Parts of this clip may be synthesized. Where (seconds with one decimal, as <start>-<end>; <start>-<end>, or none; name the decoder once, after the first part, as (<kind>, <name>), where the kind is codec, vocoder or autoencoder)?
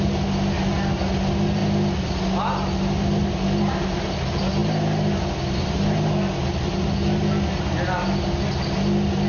none